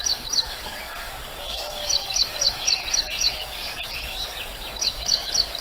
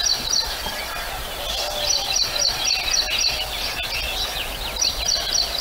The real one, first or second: second